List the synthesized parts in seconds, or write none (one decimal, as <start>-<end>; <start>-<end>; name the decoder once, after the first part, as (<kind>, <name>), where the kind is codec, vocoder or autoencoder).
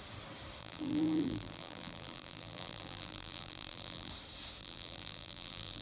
0.6-4.1 (vocoder, BigVGAN v2); 4.6-5.8